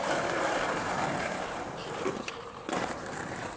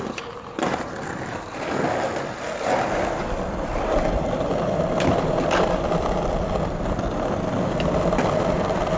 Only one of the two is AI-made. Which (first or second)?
first